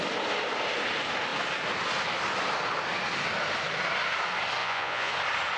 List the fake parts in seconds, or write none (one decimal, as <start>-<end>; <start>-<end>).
4.6-5.1